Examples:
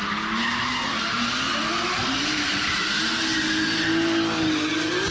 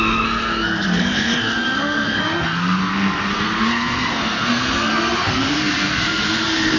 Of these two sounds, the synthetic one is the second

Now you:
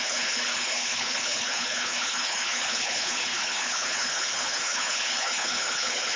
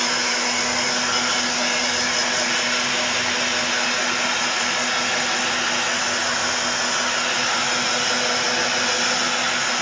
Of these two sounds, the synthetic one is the first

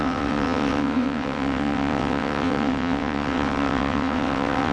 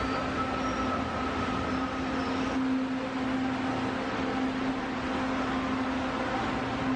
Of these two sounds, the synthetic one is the first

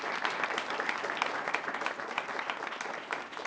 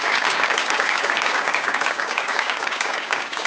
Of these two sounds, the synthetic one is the second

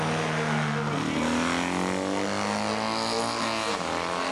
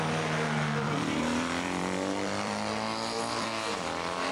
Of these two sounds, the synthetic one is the second